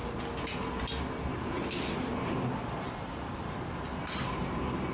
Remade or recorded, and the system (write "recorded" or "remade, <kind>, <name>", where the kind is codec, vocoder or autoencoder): recorded